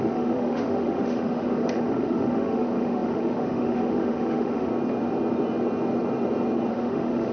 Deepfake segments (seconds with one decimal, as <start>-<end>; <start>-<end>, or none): 0.0-4.7; 6.7-7.3